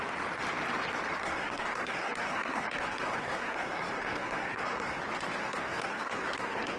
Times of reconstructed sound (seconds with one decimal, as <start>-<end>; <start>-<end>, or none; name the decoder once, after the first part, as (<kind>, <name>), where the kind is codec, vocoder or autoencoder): 1.2-5.0 (codec, SNAC); 5.4-6.8